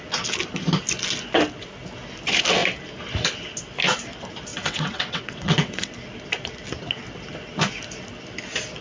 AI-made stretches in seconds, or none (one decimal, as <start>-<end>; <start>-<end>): 4.5-5.9